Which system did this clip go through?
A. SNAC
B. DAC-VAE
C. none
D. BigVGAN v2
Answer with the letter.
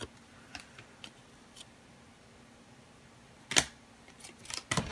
C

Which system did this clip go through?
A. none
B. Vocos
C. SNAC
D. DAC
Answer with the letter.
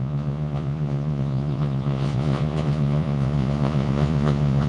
B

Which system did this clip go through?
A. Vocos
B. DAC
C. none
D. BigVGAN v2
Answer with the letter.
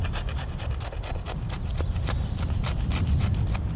C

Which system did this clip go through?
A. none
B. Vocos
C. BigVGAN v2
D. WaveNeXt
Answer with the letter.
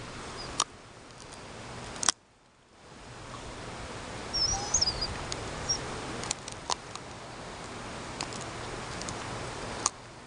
C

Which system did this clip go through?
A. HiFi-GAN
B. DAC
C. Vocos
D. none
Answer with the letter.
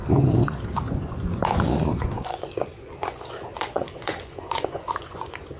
C